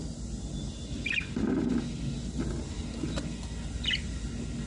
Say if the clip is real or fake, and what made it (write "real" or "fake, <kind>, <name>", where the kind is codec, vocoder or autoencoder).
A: real